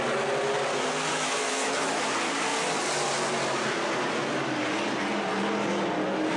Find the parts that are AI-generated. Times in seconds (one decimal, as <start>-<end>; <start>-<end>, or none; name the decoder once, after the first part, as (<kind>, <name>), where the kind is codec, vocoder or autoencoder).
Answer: 1.1-2.1 (autoencoder, DAC-VAE)